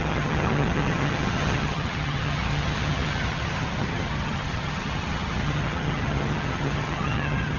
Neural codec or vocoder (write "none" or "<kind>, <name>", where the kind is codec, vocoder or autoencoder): vocoder, HiFi-GAN